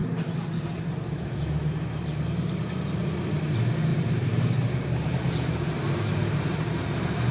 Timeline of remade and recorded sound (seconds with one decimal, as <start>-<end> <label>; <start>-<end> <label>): 0.0-3.9 recorded; 3.9-7.3 remade